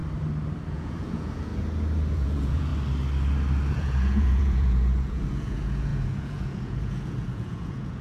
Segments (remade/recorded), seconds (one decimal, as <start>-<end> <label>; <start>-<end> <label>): 0.0-0.7 recorded; 0.7-1.5 remade; 1.5-2.1 recorded; 2.1-2.7 remade; 2.7-3.7 recorded; 3.7-8.0 remade